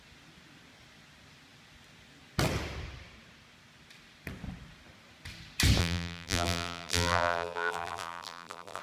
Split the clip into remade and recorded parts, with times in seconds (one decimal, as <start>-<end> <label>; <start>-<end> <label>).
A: 0.0-5.8 recorded; 5.8-8.8 remade